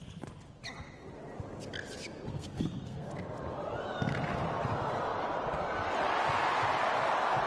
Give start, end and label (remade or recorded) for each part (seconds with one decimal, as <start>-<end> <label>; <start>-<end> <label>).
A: 0.0-2.3 recorded; 2.3-3.1 remade; 3.1-7.5 recorded